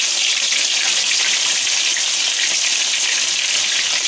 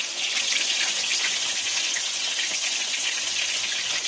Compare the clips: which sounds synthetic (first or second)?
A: second